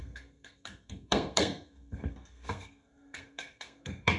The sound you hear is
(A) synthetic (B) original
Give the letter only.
A